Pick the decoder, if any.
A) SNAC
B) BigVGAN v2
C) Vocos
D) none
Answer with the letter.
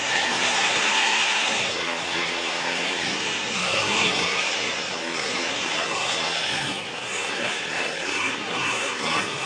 A